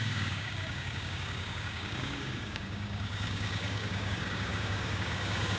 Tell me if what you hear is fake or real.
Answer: fake